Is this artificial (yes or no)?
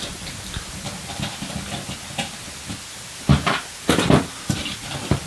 no